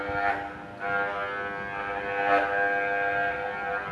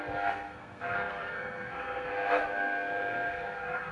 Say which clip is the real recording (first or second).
first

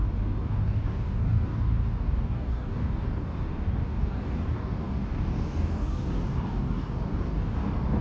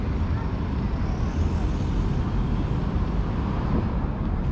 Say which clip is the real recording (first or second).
second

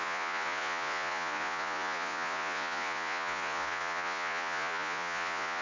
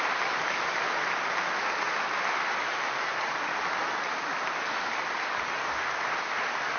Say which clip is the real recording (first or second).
second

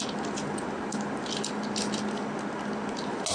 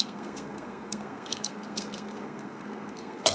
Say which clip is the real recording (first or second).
first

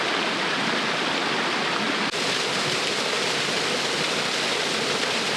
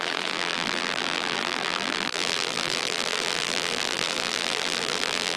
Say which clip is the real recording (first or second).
first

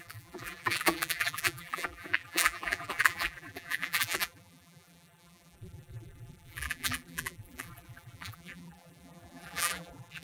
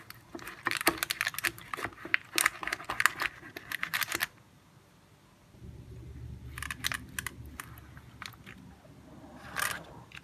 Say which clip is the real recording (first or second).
second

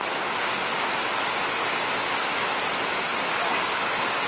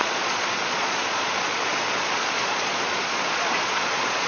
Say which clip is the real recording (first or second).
first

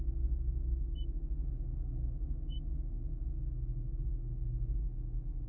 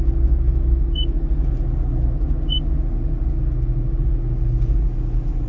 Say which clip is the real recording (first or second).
second